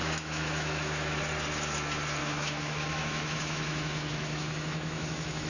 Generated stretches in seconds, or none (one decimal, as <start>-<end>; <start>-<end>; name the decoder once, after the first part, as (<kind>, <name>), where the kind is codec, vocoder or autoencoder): 0.0-1.2 (autoencoder, DAC-VAE); 2.2-5.5